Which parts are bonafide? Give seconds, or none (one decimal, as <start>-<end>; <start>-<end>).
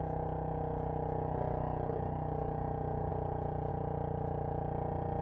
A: 0.0-5.2